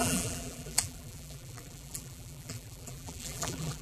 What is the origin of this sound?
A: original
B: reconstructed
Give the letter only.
B